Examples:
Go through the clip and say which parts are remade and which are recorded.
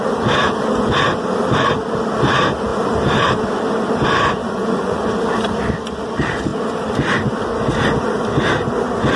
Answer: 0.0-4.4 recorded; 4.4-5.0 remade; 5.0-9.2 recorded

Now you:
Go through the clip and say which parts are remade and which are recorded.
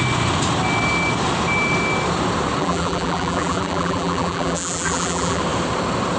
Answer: 0.0-2.6 recorded; 2.6-5.4 remade; 5.4-6.2 recorded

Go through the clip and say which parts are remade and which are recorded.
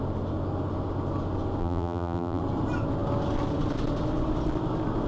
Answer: 0.0-1.6 recorded; 1.6-2.4 remade; 2.4-5.1 recorded